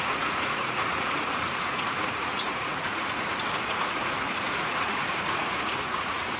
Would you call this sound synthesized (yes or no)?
yes